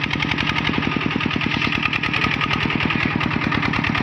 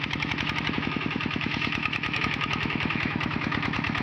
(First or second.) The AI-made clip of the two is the second